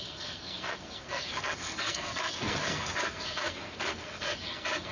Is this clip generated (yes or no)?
yes